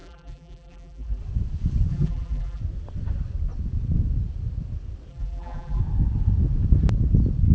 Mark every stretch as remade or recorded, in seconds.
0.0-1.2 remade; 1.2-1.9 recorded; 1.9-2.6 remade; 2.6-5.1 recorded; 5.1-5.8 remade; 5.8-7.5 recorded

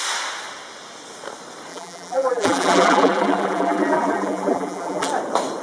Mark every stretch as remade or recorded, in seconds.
0.0-1.7 recorded; 1.7-5.1 remade; 5.1-5.6 recorded

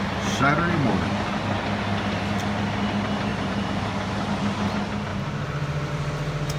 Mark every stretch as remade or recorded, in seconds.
0.0-3.3 recorded; 3.3-4.3 remade; 4.3-5.1 recorded; 5.1-5.9 remade; 5.9-6.6 recorded